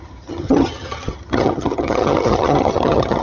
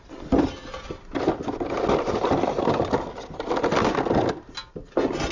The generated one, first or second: first